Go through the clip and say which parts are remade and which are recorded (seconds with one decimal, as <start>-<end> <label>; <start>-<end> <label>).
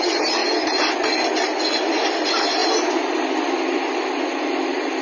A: 0.0-5.0 recorded